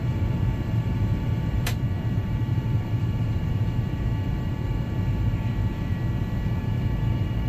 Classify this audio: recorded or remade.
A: remade